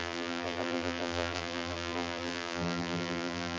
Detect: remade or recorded remade